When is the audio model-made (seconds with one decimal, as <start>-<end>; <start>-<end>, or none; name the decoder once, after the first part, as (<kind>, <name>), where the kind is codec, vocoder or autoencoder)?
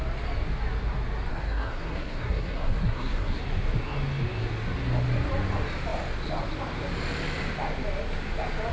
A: 1.3-3.4 (codec, SNAC)